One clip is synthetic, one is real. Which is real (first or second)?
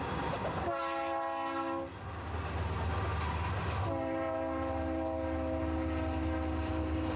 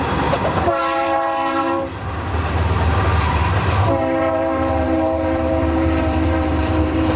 first